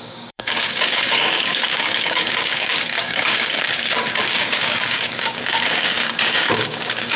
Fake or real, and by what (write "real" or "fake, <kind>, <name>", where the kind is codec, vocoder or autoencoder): fake, codec, DAC